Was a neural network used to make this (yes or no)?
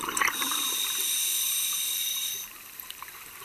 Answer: yes